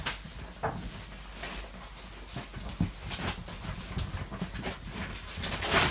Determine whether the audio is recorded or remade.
recorded